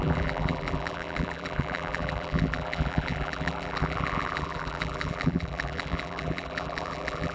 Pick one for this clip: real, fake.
fake